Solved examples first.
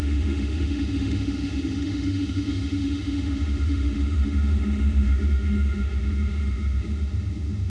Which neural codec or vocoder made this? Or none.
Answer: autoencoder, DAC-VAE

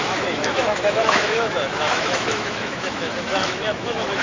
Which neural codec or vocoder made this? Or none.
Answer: autoencoder, DAC-VAE